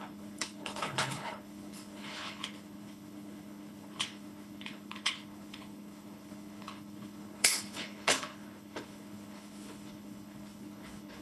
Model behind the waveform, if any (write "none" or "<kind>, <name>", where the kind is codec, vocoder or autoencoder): codec, HILCodec